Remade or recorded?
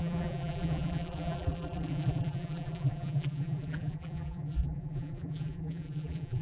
remade